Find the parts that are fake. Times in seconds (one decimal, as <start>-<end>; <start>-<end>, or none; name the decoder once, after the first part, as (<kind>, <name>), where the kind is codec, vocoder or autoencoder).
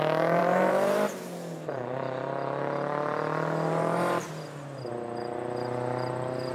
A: 0.4-4.3 (vocoder, BigVGAN v2)